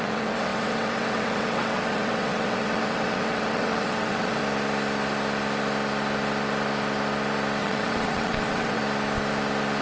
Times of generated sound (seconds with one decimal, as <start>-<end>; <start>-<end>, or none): 0.0-4.4; 7.6-8.8